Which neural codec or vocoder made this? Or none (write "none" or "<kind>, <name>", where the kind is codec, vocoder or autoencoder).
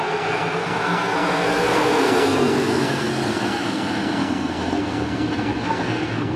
codec, SNAC